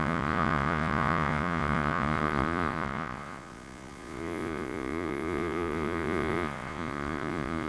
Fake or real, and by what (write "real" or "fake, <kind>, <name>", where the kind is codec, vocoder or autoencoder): fake, vocoder, Vocos